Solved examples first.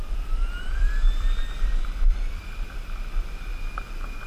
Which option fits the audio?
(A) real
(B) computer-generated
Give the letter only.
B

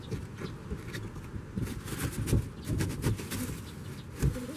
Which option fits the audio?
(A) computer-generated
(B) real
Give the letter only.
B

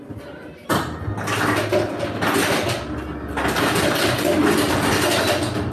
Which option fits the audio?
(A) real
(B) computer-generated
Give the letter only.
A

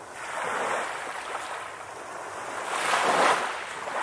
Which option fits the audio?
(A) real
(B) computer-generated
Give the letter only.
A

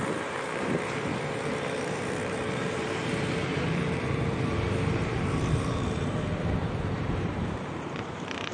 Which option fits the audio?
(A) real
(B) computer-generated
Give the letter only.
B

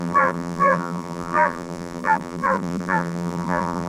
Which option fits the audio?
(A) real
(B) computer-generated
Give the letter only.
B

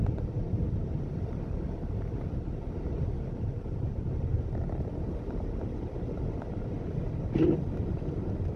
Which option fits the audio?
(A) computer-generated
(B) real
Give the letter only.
B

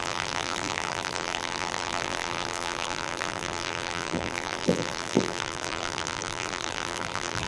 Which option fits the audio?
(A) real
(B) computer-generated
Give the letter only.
B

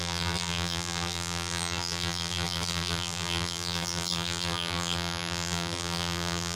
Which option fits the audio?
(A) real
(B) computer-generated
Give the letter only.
B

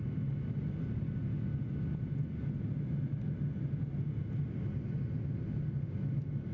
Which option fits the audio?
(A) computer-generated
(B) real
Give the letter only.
B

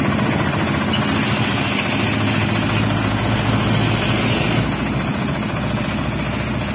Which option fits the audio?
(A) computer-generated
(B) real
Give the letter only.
B